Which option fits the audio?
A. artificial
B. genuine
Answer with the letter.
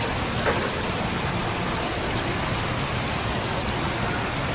B